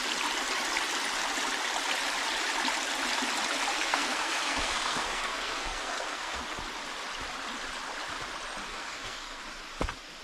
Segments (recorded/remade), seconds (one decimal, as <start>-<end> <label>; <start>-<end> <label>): 0.0-3.7 recorded; 3.7-6.4 remade; 6.4-8.7 recorded; 8.7-9.4 remade; 9.4-10.2 recorded